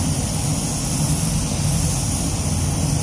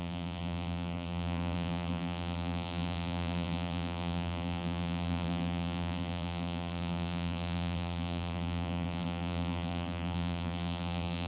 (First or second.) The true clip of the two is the first